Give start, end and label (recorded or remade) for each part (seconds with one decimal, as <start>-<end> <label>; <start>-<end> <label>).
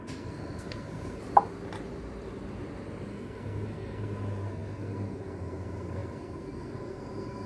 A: 0.0-1.2 remade; 1.2-3.1 recorded; 3.1-7.5 remade